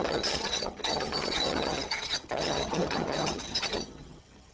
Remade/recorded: remade